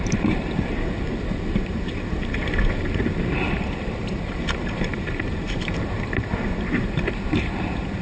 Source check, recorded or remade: remade